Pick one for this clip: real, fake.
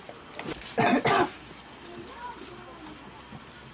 real